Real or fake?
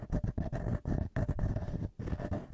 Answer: real